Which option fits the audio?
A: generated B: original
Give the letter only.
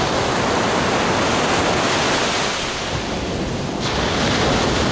B